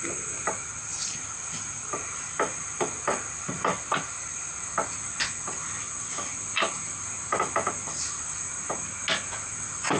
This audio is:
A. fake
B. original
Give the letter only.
B